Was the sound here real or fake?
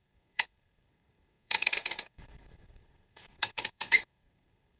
fake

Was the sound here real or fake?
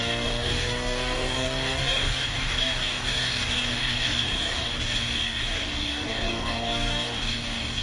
fake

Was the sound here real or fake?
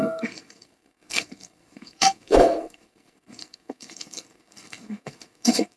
fake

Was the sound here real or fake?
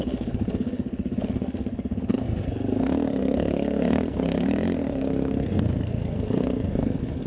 fake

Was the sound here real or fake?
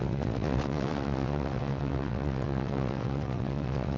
fake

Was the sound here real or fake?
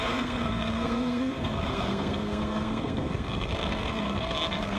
fake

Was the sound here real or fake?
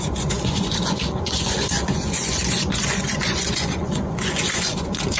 fake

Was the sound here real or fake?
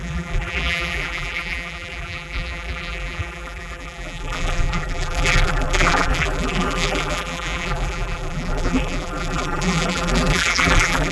fake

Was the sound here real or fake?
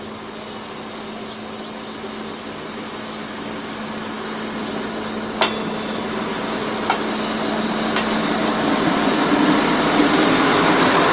real